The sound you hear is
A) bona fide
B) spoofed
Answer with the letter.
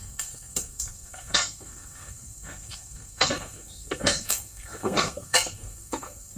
B